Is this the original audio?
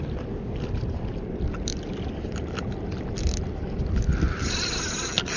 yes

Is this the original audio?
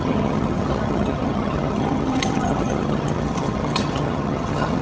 no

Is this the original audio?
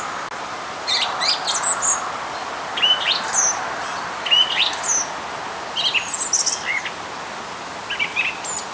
yes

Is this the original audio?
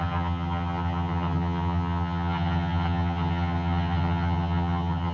no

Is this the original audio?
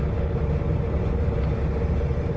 yes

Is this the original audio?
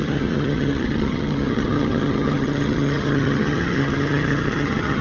no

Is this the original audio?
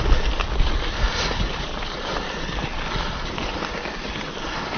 yes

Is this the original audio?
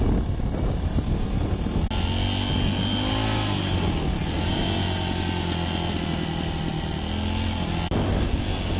yes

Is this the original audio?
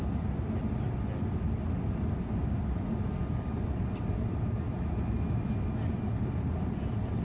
yes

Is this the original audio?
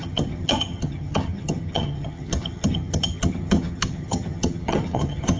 no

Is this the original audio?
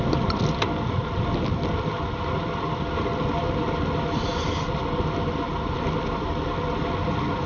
yes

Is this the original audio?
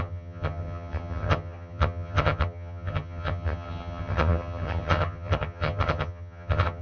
no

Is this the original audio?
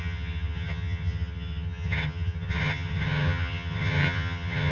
no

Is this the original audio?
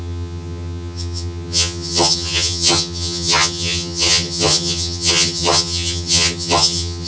no